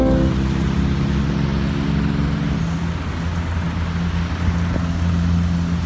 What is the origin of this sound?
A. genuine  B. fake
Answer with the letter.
A